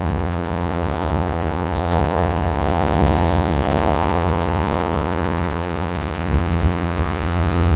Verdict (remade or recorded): remade